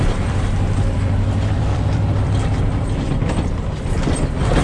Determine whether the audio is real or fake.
fake